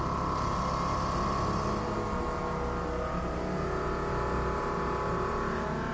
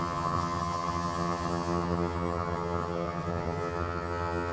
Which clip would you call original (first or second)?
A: first